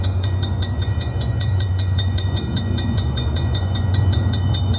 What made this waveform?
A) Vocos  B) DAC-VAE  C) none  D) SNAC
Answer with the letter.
A